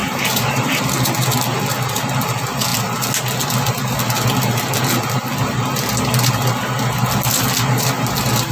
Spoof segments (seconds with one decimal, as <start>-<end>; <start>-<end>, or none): 0.0-0.8